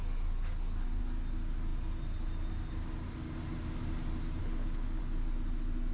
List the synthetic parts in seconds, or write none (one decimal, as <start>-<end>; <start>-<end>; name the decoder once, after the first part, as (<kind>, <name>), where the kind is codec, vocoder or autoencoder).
4.4-5.0 (codec, HILCodec)